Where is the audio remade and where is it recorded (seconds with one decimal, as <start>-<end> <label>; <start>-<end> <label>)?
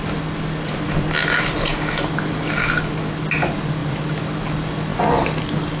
0.0-5.8 recorded